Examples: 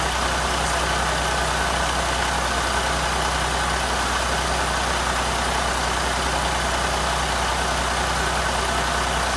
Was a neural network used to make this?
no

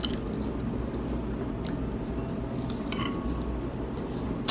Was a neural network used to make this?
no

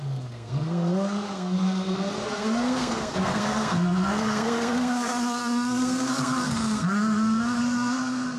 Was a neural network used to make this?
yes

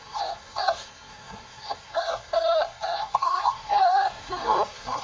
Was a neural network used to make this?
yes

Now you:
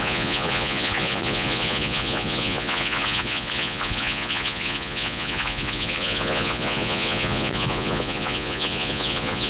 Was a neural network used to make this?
yes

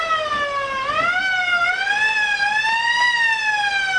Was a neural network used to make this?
no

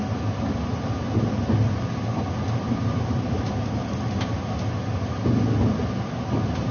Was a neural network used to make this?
no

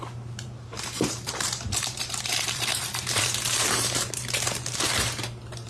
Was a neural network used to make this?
yes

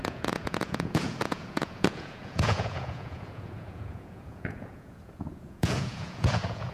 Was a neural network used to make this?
yes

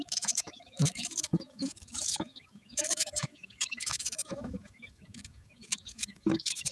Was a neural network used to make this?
yes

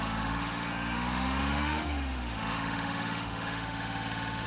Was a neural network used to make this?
yes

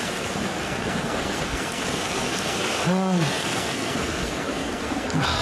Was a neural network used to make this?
yes